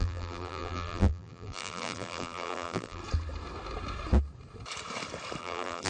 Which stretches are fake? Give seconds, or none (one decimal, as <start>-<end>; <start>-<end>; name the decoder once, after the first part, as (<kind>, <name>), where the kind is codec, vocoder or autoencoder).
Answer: 0.0-3.0 (vocoder, BigVGAN v2); 5.4-5.9